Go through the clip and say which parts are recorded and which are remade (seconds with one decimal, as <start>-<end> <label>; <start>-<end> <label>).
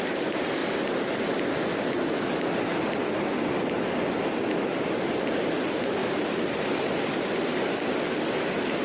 0.0-6.0 recorded; 6.0-7.4 remade; 7.4-8.8 recorded